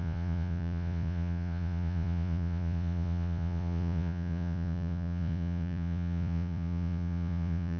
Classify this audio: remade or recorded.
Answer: remade